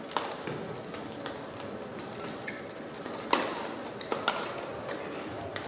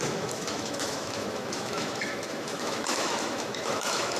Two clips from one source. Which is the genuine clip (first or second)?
first